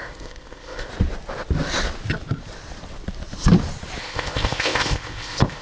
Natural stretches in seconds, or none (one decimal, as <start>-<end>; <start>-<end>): 0.9-4.0